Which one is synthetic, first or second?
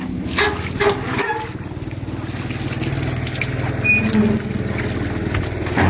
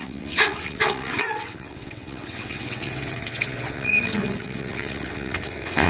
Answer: second